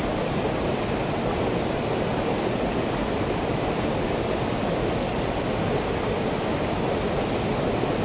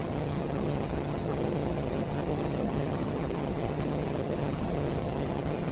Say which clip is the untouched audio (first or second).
first